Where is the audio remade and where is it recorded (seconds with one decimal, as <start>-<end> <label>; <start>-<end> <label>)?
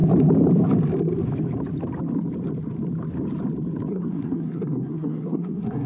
0.0-3.9 recorded; 3.9-5.9 remade